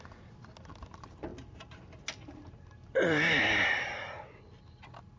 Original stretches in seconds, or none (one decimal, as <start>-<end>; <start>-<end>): 0.0-5.2